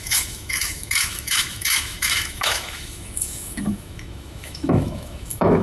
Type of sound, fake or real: fake